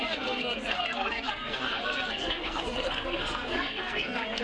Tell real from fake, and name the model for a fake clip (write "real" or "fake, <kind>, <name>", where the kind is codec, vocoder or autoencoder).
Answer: fake, codec, SNAC